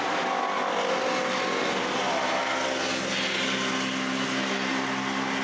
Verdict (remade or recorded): recorded